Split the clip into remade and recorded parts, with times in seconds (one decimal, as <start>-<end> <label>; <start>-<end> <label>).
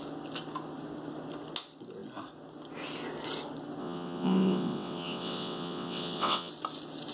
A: 0.0-3.8 recorded; 3.8-6.5 remade; 6.5-7.1 recorded